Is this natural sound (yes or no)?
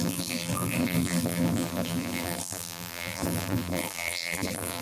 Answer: no